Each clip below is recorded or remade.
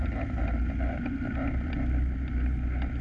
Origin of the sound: recorded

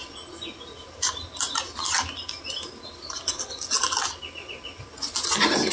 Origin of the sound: recorded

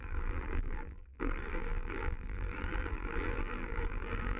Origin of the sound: remade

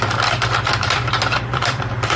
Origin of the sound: remade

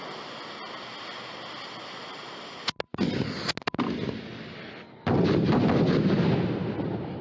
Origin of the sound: recorded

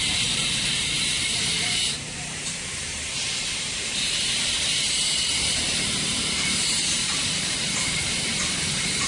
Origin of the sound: remade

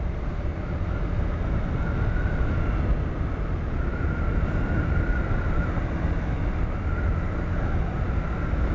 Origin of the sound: recorded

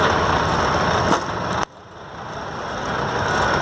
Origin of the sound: recorded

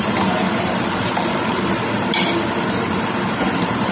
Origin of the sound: remade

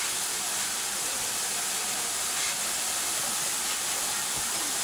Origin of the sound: remade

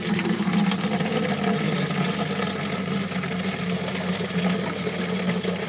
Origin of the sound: recorded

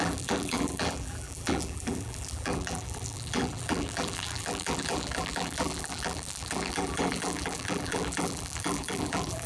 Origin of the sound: remade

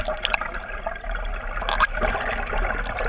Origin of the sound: recorded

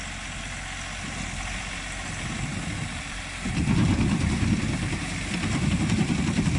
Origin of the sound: remade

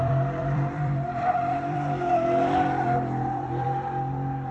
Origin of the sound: remade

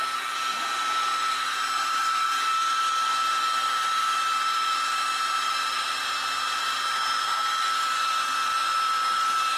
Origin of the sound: remade